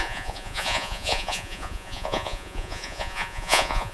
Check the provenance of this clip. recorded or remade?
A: remade